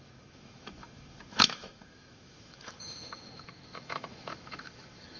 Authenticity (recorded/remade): remade